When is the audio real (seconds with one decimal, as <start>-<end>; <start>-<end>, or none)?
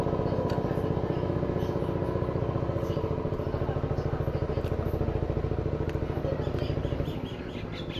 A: 0.0-8.0